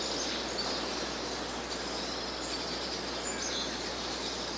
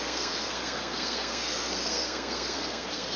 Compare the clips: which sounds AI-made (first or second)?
second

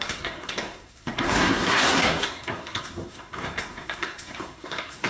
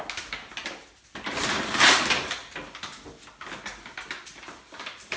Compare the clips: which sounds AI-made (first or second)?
first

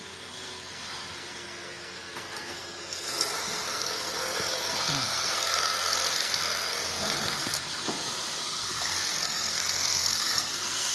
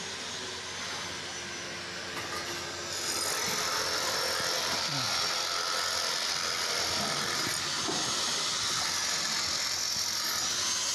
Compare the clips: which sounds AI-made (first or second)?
first